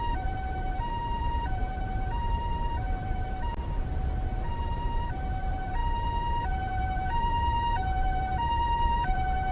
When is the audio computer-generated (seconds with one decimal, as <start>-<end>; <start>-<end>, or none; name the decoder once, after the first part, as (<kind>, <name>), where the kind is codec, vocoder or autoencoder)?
0.0-3.5 (vocoder, BigVGAN v2); 4.5-9.5